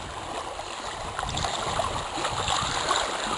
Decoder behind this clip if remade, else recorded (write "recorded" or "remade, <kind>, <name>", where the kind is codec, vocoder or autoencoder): recorded